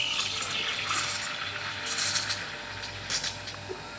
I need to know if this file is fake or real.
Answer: real